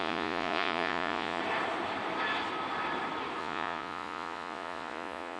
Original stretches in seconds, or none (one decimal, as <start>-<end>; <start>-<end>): 1.4-3.4